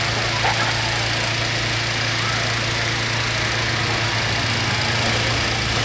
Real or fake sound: real